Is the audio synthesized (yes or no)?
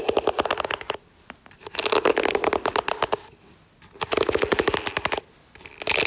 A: no